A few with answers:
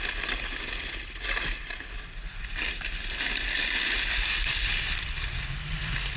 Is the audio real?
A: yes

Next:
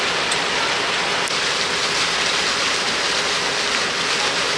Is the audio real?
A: yes